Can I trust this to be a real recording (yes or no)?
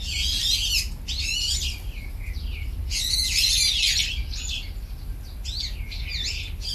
yes